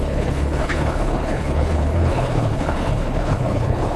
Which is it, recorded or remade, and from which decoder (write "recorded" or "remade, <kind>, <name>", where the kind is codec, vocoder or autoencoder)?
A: remade, codec, HILCodec